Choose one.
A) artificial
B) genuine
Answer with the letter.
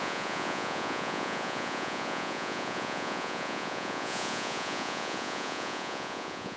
A